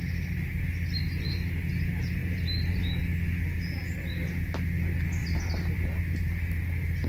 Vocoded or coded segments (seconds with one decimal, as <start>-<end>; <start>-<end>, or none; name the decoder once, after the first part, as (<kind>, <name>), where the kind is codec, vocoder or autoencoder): 2.2-3.0 (vocoder, BigVGAN v2); 5.2-6.0